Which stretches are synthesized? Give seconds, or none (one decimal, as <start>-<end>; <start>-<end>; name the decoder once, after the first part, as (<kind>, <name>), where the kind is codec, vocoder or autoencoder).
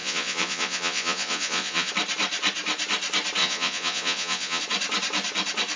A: 0.0-1.9 (vocoder, Vocos); 3.4-4.6